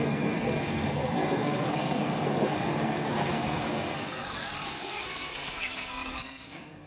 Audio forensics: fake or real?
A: fake